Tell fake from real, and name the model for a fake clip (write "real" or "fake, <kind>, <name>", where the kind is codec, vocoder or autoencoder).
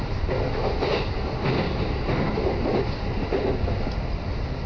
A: real